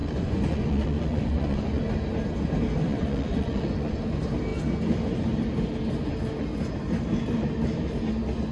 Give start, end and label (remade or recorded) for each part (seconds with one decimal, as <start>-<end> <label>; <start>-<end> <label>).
0.0-1.8 remade; 1.8-2.9 recorded; 2.9-4.0 remade; 4.0-8.5 recorded